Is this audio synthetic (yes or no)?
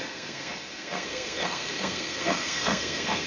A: yes